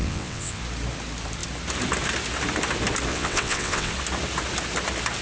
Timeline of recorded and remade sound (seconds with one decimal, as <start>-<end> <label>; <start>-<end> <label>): 0.0-0.6 remade; 0.6-3.1 recorded; 3.1-3.9 remade; 3.9-5.2 recorded